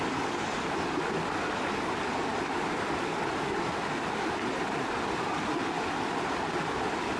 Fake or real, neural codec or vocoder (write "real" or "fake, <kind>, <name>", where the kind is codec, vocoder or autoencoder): real